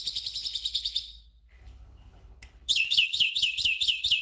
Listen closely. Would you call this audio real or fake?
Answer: fake